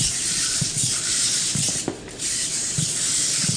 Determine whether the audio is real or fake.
fake